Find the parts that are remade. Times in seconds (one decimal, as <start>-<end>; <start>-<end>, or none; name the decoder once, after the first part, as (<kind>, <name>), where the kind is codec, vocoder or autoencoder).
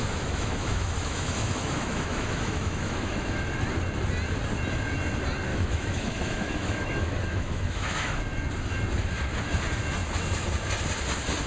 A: 0.0-3.4 (autoencoder, DAC-VAE); 5.5-8.2